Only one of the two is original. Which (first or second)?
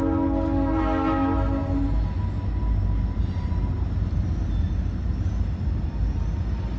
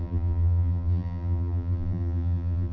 first